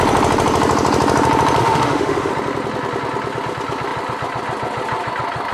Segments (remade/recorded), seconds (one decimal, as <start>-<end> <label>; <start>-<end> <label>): 0.0-1.6 recorded; 1.6-2.3 remade; 2.3-5.5 recorded